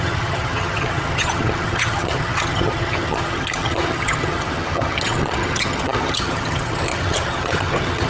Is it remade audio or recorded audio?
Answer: remade